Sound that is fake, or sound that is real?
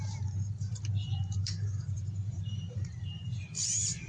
fake